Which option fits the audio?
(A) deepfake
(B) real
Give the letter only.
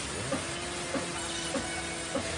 B